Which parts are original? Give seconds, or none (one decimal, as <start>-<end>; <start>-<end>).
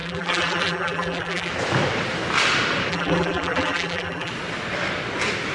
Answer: 1.5-2.9; 4.3-5.5